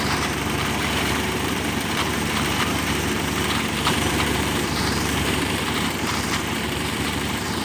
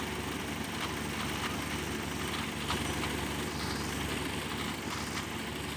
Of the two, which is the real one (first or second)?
second